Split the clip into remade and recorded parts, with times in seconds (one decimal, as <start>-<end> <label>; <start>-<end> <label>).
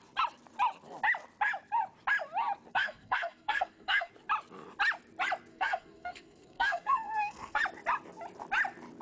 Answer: 0.0-2.7 recorded; 2.7-4.1 remade; 4.1-5.5 recorded; 5.5-7.6 remade; 7.6-9.0 recorded